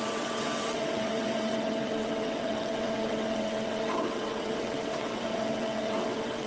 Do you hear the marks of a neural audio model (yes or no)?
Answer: yes